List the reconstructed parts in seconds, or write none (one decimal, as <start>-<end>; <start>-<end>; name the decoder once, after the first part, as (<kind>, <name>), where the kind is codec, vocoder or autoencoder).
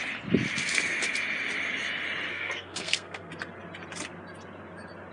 2.3-3.3 (codec, SNAC)